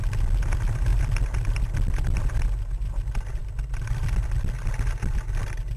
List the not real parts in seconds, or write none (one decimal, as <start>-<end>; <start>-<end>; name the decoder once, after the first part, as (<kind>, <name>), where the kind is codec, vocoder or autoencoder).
none